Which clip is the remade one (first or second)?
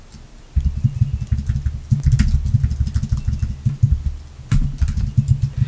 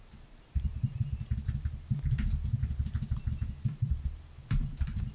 second